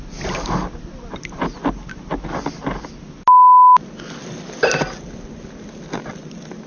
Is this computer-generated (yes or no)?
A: no